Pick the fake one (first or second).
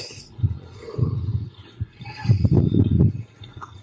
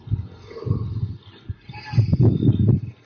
first